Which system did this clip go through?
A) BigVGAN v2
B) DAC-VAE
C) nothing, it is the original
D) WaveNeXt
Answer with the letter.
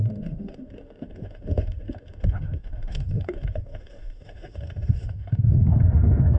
B